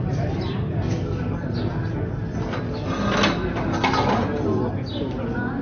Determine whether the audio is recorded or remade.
recorded